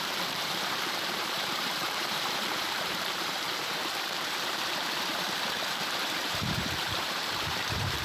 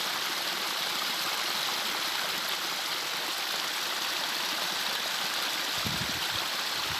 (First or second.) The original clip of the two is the second